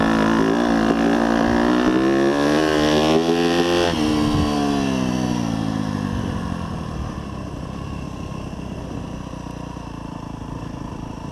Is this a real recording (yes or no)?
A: yes